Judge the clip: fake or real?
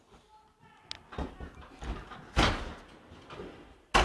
real